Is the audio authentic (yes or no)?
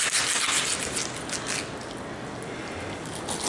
yes